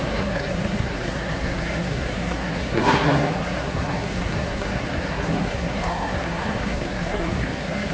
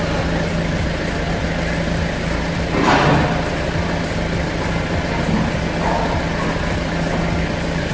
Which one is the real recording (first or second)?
second